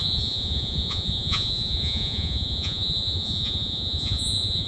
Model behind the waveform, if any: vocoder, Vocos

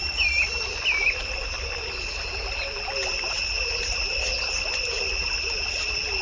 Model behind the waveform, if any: none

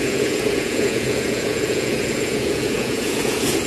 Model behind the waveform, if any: vocoder, Vocos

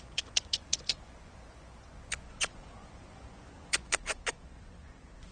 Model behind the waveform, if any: vocoder, Vocos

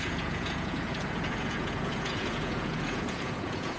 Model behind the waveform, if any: vocoder, Vocos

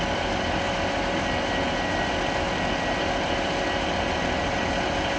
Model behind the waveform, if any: none